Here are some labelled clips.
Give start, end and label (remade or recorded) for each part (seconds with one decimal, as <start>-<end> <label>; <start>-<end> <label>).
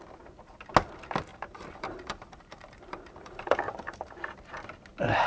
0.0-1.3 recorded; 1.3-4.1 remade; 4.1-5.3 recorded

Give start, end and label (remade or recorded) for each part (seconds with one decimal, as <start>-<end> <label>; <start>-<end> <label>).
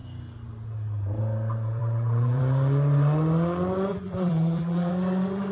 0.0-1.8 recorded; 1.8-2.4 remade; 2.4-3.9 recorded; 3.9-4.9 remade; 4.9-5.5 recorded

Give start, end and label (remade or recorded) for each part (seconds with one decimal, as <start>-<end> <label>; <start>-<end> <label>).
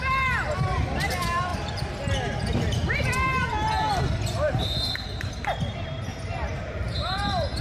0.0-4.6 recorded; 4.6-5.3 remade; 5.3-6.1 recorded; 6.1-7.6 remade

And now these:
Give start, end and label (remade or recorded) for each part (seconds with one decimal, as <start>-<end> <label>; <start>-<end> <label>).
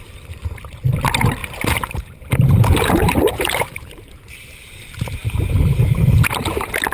0.0-1.4 recorded; 1.4-4.2 remade; 4.2-6.9 recorded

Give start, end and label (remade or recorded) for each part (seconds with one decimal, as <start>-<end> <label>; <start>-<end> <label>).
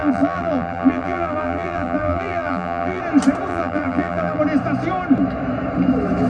0.0-3.0 remade; 3.0-3.5 recorded; 3.5-4.4 remade; 4.4-6.3 recorded